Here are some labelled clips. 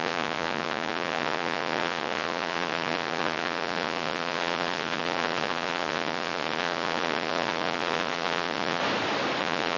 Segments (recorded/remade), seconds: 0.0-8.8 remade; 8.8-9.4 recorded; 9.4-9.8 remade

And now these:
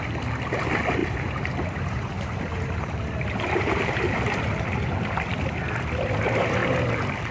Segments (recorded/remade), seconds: 0.0-1.0 recorded; 1.0-4.5 remade; 4.5-7.3 recorded

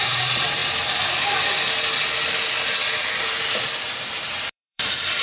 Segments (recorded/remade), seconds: 0.0-0.6 remade; 0.6-3.7 recorded; 3.7-5.2 remade

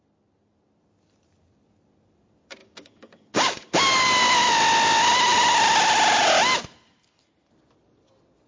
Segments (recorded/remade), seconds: 0.0-2.6 recorded; 2.6-3.8 remade; 3.8-8.5 recorded